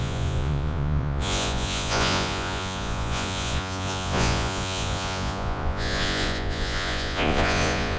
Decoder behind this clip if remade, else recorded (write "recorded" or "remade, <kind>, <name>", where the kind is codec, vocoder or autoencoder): remade, vocoder, Vocos